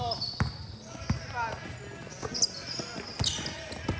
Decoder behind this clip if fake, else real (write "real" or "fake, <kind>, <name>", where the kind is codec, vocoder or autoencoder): real